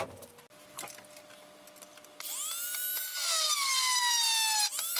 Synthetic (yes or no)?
no